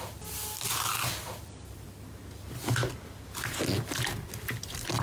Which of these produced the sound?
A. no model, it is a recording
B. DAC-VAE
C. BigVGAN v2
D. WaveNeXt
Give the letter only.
A